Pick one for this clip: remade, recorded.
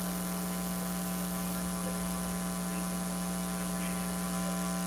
recorded